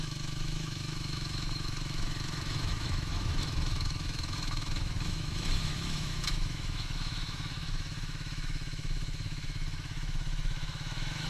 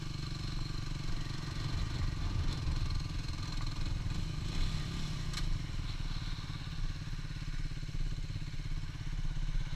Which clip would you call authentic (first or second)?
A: second